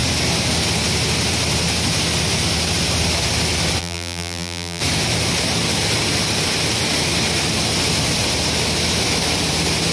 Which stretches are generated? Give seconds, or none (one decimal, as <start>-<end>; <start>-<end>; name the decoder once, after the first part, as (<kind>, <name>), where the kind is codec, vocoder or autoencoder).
3.8-4.8 (vocoder, BigVGAN v2)